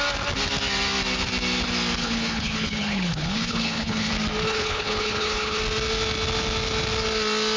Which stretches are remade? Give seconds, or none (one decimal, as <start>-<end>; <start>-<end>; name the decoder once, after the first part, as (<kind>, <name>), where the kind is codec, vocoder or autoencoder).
2.0-4.1 (codec, HILCodec); 4.5-5.6